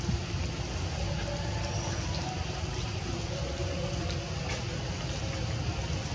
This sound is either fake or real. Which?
real